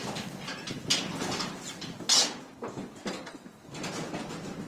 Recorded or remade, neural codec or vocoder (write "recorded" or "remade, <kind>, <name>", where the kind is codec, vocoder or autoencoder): recorded